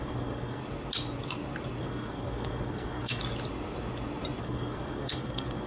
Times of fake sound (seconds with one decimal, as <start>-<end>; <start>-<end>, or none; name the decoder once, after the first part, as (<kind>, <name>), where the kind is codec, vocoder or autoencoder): 0.0-0.6 (codec, SNAC); 1.8-3.2; 4.4-5.7